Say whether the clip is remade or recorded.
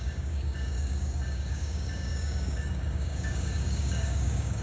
remade